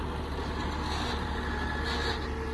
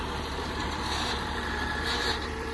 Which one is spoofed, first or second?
second